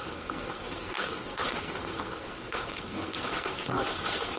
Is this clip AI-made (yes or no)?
yes